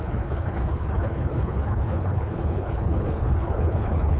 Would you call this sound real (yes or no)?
no